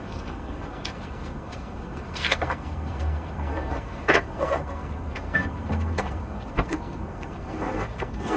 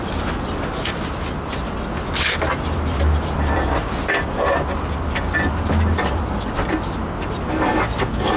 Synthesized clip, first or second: first